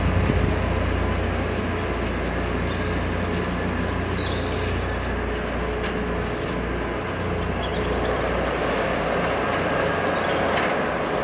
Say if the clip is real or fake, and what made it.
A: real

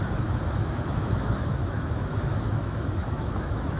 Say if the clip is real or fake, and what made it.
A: fake, autoencoder, DAC-VAE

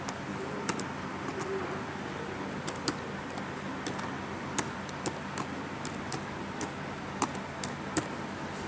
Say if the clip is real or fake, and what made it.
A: real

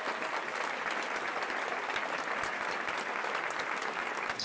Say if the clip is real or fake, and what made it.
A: real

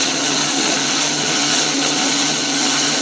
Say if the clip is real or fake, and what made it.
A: fake, vocoder, HiFi-GAN